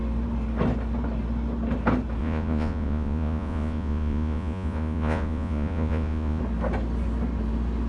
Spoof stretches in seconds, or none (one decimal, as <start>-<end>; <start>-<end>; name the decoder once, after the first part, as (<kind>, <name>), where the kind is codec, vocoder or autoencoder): 2.2-6.4 (vocoder, Vocos)